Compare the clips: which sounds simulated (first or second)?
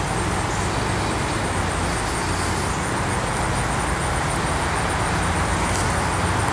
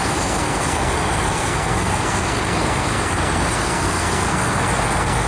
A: second